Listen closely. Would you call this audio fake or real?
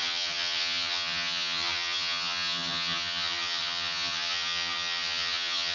fake